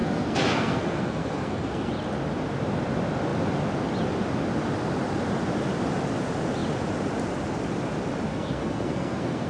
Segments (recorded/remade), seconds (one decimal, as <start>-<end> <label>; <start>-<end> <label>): 0.0-1.9 remade; 1.9-8.3 recorded; 8.3-9.5 remade